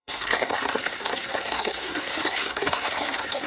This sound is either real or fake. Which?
fake